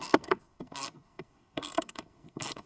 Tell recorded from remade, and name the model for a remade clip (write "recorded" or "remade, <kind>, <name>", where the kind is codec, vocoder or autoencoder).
remade, codec, SNAC